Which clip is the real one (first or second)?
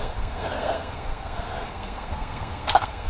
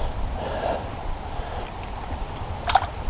second